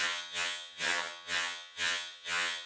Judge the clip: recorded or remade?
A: remade